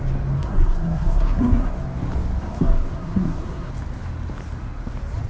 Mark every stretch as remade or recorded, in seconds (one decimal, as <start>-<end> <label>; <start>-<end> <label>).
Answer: 0.0-0.4 recorded; 0.4-1.7 remade; 1.7-2.4 recorded; 2.4-3.7 remade; 3.7-5.3 recorded